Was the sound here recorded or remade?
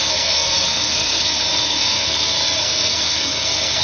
remade